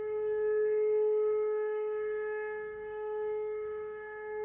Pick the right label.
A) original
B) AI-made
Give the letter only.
B